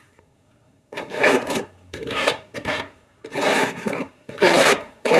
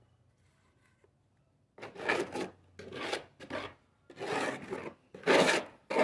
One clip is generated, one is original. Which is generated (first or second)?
first